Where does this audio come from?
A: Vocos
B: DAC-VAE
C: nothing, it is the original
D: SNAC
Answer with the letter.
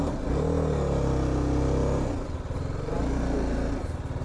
C